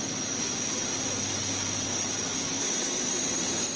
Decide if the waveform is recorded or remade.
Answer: recorded